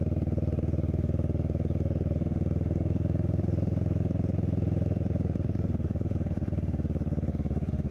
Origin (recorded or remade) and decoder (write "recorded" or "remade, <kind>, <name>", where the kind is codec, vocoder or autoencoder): remade, autoencoder, DAC-VAE